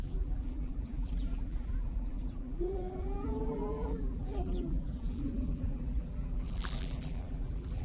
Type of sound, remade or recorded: remade